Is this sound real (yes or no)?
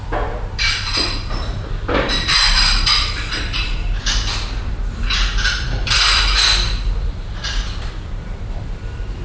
no